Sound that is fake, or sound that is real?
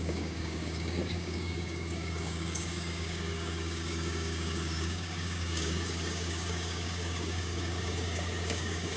fake